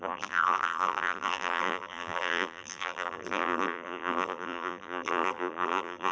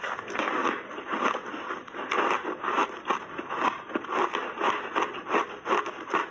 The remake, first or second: first